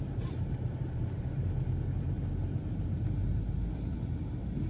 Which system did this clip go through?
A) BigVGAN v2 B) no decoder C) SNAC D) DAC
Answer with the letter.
A